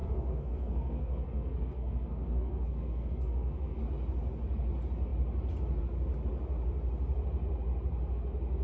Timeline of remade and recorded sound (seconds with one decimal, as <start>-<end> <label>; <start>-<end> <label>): 0.0-3.8 remade; 3.8-8.6 recorded